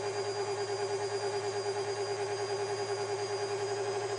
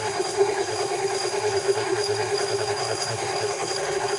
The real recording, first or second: first